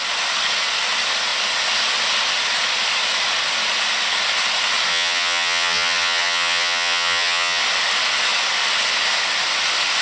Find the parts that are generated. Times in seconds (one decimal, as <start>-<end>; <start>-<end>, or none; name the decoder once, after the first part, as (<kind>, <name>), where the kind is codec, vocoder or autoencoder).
4.9-7.6 (vocoder, HiFi-GAN)